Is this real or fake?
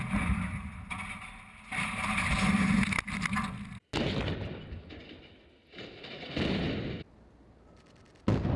real